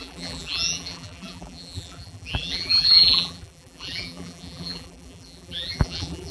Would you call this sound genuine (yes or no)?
no